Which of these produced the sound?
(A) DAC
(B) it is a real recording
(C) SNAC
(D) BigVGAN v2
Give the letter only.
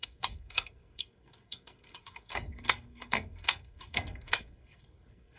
C